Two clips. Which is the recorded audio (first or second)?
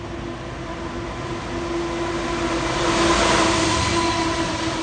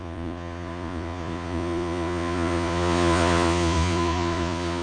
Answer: first